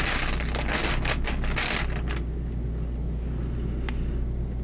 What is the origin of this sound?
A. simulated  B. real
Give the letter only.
B